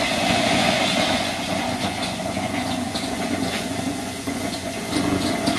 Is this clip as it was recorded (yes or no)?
no